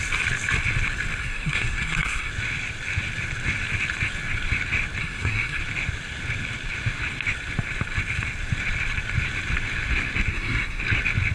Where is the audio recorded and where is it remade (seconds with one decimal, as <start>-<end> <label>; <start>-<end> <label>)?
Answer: 0.0-1.2 recorded; 1.2-2.3 remade; 2.3-5.0 recorded; 5.0-5.6 remade; 5.6-10.3 recorded; 10.3-10.8 remade; 10.8-11.3 recorded